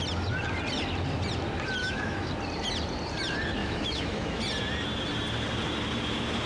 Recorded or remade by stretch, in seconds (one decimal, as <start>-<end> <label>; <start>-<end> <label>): 0.0-1.8 recorded; 1.8-2.3 remade; 2.3-3.6 recorded; 3.6-4.4 remade; 4.4-6.5 recorded